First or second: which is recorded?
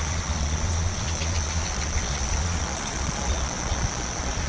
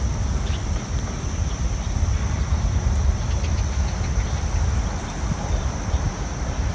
second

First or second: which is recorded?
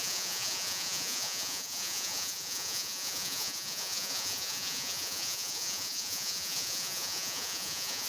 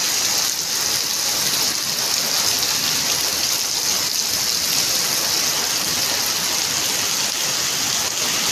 second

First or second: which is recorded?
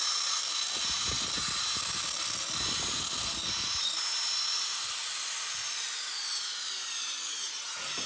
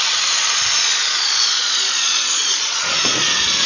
first